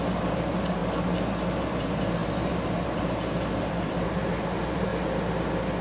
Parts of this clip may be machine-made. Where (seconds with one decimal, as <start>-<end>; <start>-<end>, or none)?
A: 0.0-0.8; 1.6-4.9